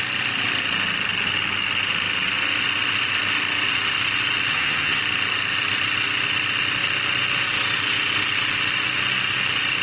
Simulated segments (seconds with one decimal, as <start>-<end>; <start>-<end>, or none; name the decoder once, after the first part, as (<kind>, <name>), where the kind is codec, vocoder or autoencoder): 4.5-5.0 (vocoder, HiFi-GAN)